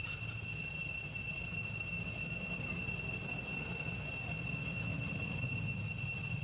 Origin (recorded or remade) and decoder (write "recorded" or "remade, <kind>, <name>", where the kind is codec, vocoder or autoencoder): recorded